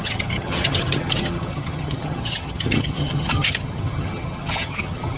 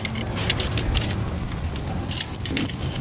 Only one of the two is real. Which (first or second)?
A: second